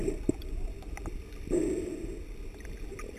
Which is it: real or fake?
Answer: real